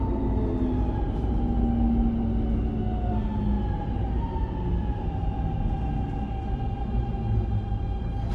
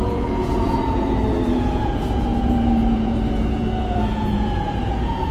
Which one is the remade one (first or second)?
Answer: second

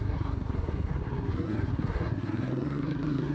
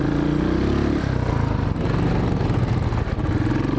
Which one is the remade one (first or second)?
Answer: first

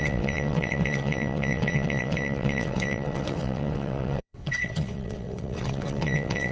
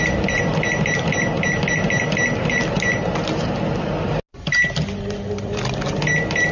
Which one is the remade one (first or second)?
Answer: first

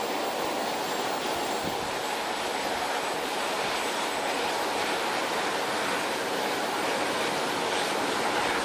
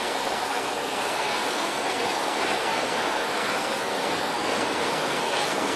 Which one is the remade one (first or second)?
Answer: second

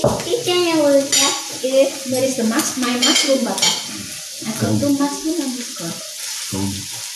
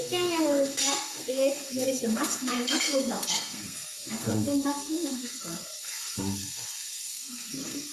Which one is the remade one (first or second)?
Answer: second